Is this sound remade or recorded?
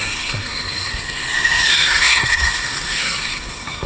remade